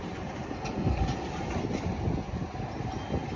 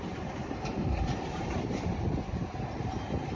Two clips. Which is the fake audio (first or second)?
second